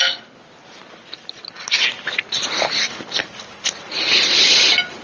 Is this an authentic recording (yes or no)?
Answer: yes